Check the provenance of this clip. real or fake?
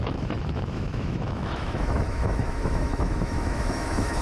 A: fake